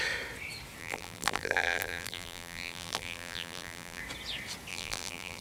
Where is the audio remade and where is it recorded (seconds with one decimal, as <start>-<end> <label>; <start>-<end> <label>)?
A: 0.0-0.8 recorded; 0.8-4.0 remade; 4.0-4.7 recorded; 4.7-5.4 remade